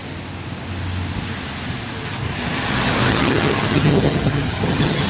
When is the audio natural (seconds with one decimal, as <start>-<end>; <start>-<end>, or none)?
0.0-3.1